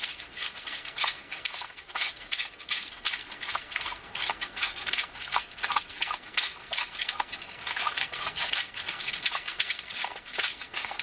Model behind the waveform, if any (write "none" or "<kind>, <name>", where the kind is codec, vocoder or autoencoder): codec, SNAC